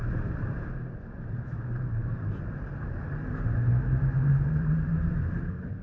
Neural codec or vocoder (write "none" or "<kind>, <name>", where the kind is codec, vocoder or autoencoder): vocoder, BigVGAN v2